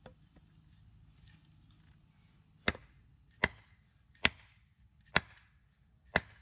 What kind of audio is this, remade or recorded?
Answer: recorded